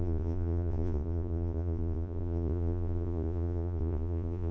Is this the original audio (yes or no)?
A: no